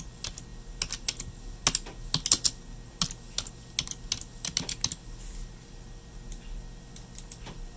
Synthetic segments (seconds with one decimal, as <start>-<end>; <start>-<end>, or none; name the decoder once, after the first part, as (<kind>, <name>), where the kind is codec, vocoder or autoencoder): none